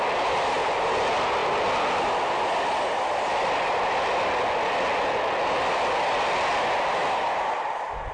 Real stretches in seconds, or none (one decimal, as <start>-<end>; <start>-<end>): 0.0-8.1